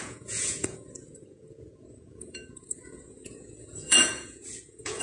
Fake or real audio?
fake